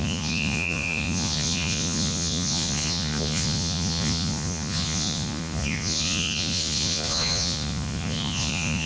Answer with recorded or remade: remade